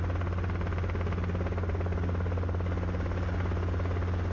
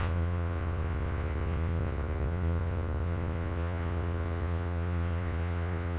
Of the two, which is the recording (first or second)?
first